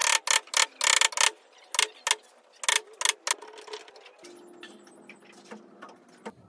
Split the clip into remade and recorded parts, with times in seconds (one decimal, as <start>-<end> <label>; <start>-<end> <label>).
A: 0.0-6.5 recorded